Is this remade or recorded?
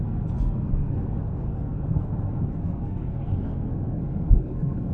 remade